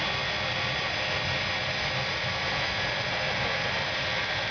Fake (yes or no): no